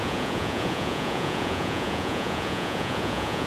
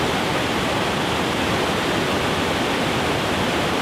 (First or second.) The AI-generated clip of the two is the first